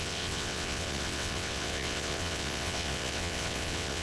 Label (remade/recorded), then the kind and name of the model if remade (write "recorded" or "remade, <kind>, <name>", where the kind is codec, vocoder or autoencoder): remade, vocoder, WaveNeXt